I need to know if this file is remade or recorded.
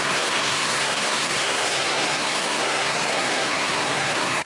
remade